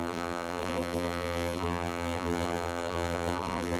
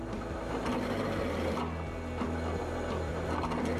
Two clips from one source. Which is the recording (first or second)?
second